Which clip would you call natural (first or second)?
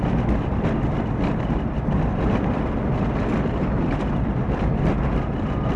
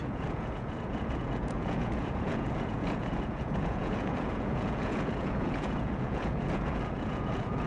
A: first